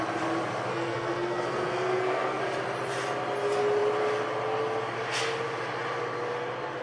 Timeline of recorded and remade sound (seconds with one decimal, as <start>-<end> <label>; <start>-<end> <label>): 0.0-0.7 recorded; 0.7-2.4 remade; 2.4-6.8 recorded